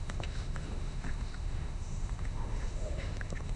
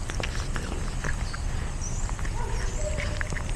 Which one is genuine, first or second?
second